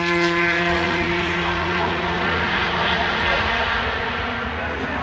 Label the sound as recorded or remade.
remade